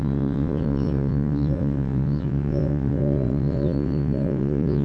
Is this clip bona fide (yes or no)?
no